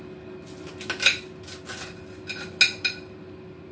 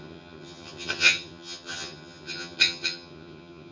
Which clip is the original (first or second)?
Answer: first